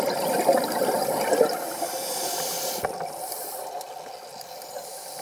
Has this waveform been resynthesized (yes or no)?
no